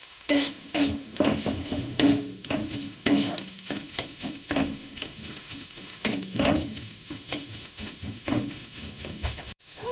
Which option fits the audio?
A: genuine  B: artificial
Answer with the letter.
B